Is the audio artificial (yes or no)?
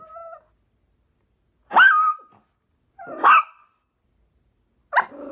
no